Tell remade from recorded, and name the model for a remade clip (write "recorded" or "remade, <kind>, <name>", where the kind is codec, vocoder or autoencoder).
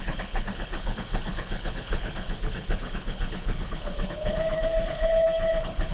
remade, codec, HILCodec